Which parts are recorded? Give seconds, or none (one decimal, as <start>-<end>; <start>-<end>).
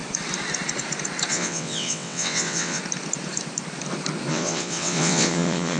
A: 0.0-1.3; 2.8-4.3